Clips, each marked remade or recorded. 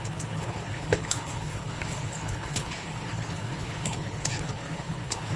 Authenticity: remade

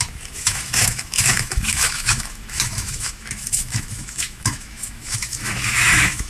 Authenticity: remade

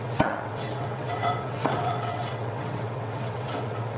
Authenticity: remade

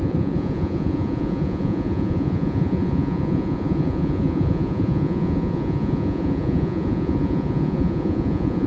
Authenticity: remade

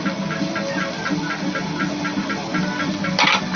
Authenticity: recorded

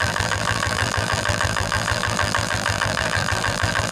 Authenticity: remade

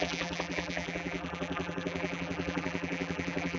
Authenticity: remade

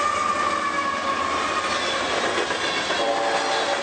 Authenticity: recorded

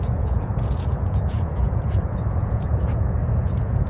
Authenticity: remade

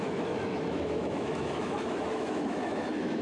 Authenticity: remade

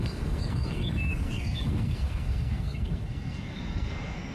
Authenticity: remade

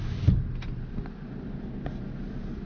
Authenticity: recorded